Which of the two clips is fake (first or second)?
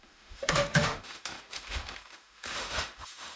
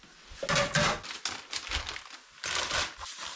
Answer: first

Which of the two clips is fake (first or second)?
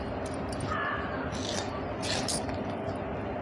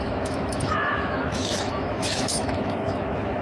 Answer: second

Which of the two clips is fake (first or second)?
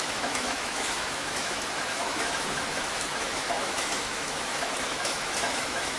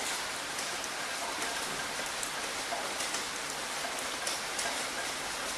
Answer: first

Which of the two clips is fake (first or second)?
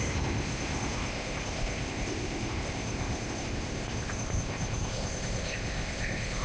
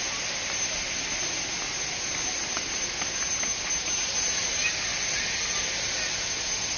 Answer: first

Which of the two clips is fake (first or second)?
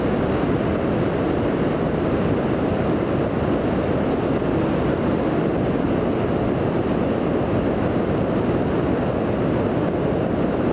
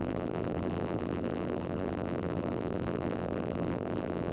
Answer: second